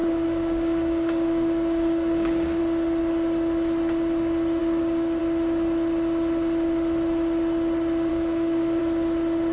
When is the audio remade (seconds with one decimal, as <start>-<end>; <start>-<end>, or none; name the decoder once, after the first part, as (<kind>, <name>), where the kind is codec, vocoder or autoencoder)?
0.0-2.6 (codec, DAC); 4.6-5.2; 8.1-8.8